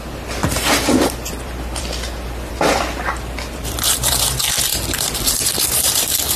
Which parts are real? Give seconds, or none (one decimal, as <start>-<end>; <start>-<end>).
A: 0.0-0.4; 4.2-4.7; 6.0-6.4